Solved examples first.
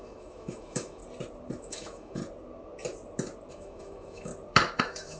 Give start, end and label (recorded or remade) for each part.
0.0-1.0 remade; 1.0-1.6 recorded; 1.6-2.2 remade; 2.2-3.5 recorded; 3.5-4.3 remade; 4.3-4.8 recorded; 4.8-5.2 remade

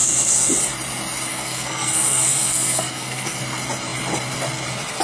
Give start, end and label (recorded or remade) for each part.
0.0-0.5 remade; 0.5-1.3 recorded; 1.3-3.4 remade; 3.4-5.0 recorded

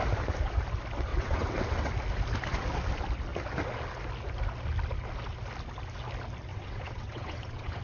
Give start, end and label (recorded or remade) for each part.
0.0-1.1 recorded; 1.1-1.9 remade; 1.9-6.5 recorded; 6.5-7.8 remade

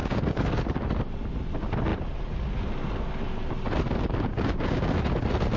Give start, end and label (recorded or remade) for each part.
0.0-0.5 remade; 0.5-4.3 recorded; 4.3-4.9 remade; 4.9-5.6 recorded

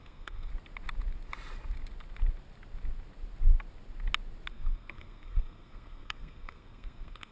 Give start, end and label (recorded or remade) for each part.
0.0-0.5 remade; 0.5-4.5 recorded; 4.5-7.3 remade

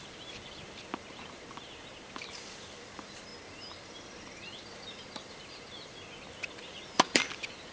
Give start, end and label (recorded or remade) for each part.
0.0-7.7 remade

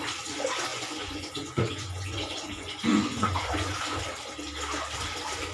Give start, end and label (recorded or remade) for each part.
0.0-0.7 recorded; 0.7-4.0 remade; 4.0-5.5 recorded